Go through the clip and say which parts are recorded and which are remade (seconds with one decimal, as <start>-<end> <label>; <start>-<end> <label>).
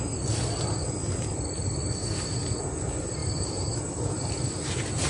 0.0-2.0 recorded; 2.0-2.6 remade; 2.6-3.2 recorded; 3.2-3.8 remade; 3.8-5.1 recorded